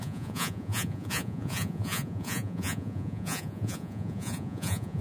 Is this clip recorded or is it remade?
remade